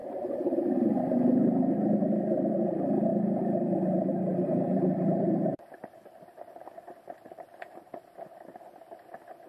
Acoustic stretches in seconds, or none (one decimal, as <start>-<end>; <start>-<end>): 0.6-3.1; 8.0-9.5